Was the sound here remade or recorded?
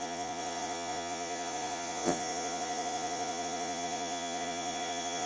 remade